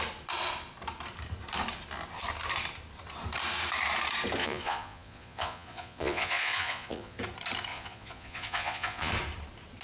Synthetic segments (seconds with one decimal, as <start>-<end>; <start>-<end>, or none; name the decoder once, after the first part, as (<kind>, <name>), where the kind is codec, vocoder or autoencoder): 4.4-7.2 (vocoder, Vocos); 7.7-9.1